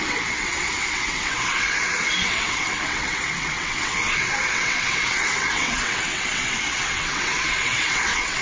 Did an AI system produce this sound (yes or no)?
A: yes